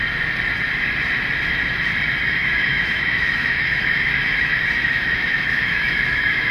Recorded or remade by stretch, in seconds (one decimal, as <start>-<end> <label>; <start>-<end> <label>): 0.0-2.4 recorded; 2.4-6.5 remade